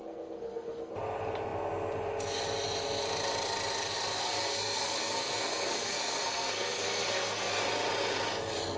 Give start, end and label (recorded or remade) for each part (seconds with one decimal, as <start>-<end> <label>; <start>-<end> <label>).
0.0-0.9 remade; 0.9-4.2 recorded; 4.2-7.6 remade; 7.6-8.8 recorded